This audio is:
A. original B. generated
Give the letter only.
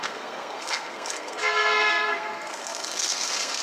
B